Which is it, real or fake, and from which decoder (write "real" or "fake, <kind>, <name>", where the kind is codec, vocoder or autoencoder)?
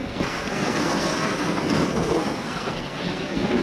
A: fake, codec, SNAC